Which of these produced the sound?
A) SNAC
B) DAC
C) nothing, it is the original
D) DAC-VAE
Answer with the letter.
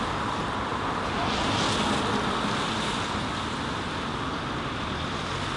C